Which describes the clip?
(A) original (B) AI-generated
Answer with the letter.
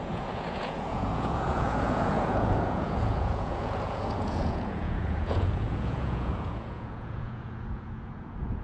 B